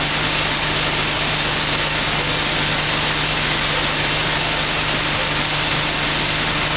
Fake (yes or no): no